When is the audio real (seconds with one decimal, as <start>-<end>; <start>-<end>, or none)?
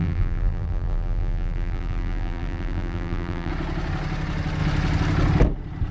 3.5-5.9